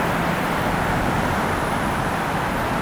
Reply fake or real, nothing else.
fake